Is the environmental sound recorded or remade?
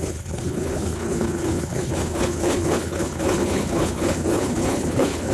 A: remade